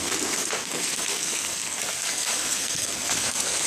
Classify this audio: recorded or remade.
remade